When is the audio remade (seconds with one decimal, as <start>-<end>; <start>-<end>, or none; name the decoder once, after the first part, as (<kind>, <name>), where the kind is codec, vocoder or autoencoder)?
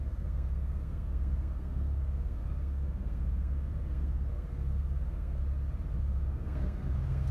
0.0-5.4 (codec, SNAC); 6.0-7.3